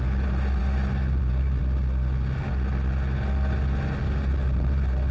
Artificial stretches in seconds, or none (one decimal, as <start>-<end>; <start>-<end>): none